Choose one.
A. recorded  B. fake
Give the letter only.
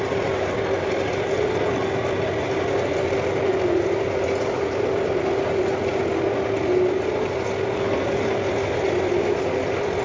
A